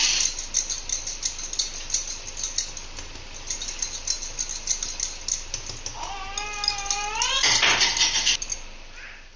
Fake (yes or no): no